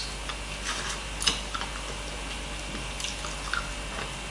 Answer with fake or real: real